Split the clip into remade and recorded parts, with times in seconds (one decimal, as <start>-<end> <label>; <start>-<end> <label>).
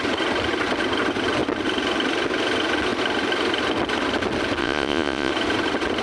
0.0-4.6 recorded; 4.6-5.3 remade; 5.3-6.0 recorded